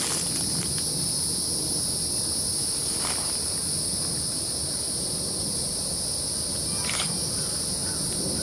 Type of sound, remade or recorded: recorded